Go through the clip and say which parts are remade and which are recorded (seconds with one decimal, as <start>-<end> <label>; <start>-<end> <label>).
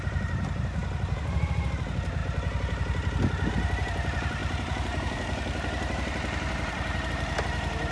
0.0-2.2 remade; 2.2-3.5 recorded; 3.5-7.9 remade